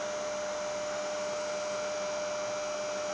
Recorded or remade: recorded